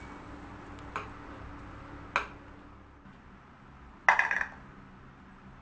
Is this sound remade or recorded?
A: recorded